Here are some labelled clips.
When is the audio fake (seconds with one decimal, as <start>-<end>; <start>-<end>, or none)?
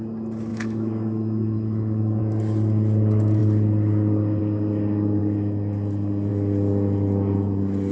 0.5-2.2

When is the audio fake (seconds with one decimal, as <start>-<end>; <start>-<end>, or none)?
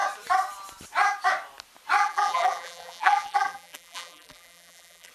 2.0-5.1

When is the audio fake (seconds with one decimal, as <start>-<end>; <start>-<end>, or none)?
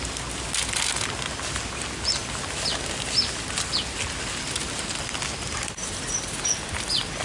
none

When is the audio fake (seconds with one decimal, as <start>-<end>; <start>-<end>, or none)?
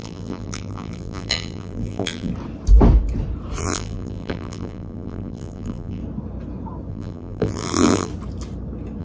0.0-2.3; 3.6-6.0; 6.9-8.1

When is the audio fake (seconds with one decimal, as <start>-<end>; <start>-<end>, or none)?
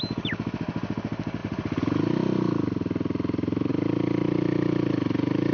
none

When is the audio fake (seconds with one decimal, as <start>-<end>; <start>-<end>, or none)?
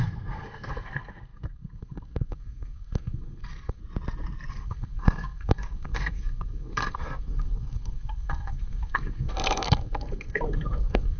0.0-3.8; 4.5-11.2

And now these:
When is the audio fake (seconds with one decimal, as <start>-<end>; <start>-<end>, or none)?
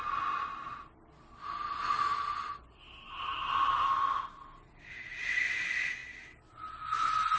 none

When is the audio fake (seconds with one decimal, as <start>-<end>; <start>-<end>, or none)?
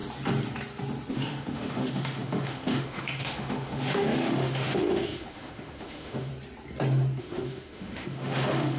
1.1-6.3; 7.2-8.8